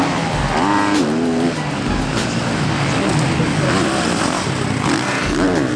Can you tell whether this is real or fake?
real